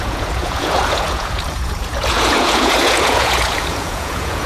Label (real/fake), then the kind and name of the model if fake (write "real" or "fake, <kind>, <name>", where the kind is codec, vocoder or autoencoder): fake, vocoder, Vocos